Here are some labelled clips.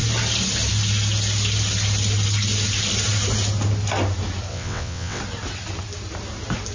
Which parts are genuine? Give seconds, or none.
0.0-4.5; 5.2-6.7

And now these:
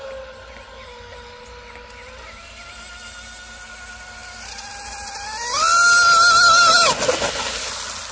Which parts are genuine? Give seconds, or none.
0.0-8.1

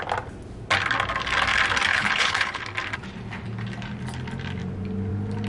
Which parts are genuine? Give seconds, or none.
0.0-1.9; 2.6-5.5

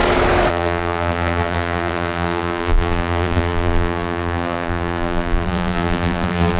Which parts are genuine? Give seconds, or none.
0.0-0.5

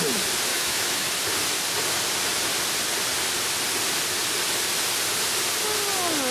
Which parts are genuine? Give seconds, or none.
0.0-0.5; 1.2-6.3

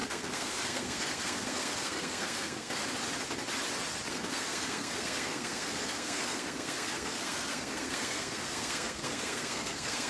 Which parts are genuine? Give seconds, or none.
2.8-4.1